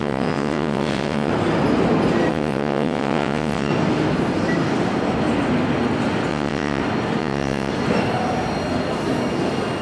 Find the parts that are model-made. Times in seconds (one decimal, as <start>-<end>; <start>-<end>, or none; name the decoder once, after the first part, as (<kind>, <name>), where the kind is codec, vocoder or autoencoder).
0.0-1.3 (vocoder, WaveNeXt); 2.3-3.7; 6.3-6.8; 7.2-7.7

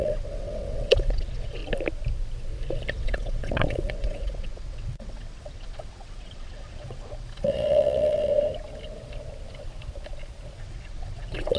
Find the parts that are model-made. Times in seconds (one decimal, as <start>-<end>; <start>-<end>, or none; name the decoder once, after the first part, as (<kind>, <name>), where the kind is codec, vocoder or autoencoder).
0.0-1.6 (vocoder, WaveNeXt); 2.9-8.3; 10.6-11.6

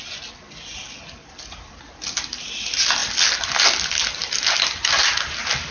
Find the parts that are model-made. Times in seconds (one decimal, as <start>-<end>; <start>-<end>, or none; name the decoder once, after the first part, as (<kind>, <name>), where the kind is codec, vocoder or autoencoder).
none

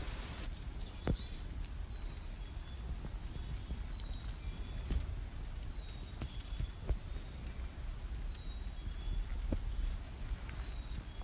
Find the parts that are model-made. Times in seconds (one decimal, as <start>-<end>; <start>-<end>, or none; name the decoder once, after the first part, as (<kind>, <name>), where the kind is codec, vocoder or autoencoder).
none